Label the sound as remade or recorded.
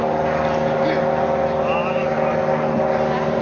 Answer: recorded